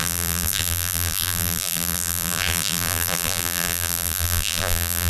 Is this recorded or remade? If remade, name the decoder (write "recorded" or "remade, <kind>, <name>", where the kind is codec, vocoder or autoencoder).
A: remade, vocoder, BigVGAN v2